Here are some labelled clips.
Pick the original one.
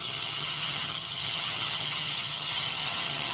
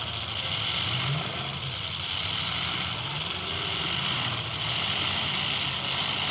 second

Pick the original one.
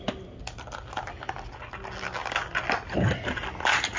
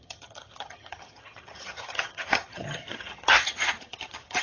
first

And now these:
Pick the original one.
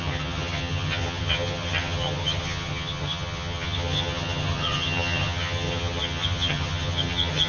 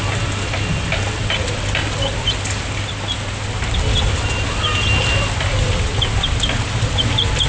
second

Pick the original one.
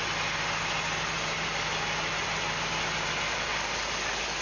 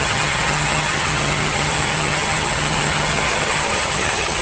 first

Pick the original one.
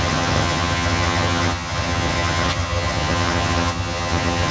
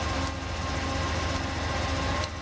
second